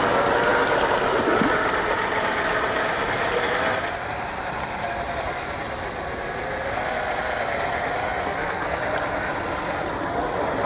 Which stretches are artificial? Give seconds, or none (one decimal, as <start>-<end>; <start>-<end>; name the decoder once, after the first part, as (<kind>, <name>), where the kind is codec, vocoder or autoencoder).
8.2-8.8 (codec, SNAC)